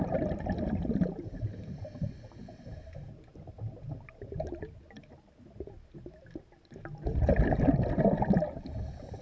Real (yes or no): yes